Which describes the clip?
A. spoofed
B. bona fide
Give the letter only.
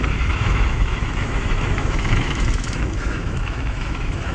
A